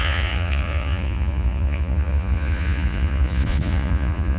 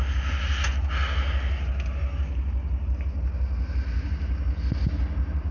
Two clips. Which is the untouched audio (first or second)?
second